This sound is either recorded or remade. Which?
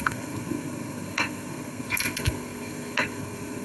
remade